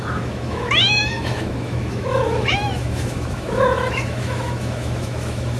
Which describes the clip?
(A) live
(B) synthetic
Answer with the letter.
B